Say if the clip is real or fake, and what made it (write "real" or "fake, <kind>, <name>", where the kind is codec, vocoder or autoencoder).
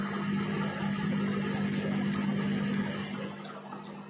real